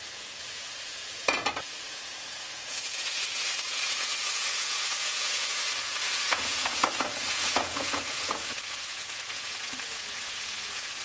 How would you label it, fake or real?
fake